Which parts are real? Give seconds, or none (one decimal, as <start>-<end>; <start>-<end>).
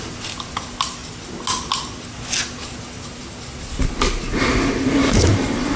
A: 0.0-5.0